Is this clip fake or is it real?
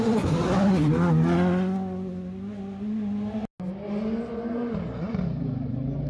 real